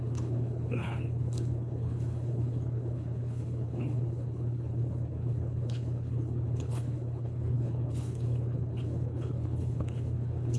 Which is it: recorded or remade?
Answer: remade